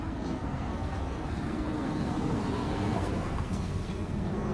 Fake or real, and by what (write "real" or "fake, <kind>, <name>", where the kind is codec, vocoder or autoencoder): fake, codec, SNAC